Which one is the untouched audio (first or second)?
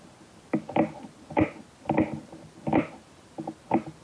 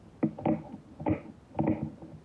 second